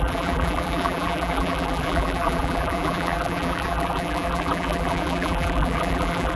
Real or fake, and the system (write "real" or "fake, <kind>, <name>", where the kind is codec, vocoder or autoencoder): fake, vocoder, BigVGAN v2